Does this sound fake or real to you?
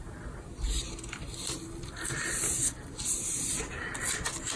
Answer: real